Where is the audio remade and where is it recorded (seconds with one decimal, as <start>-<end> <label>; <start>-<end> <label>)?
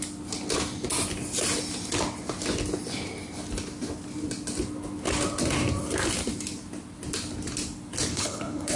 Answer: 0.0-8.1 recorded; 8.1-8.8 remade